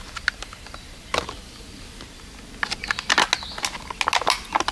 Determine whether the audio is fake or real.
real